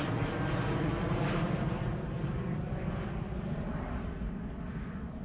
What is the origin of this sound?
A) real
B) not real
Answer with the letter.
A